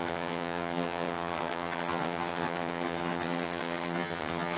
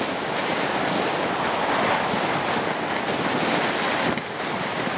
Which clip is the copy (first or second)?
first